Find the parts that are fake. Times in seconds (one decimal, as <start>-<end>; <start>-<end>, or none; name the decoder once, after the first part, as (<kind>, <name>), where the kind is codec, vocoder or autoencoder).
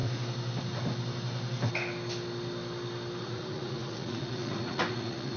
3.2-5.4 (vocoder, Vocos)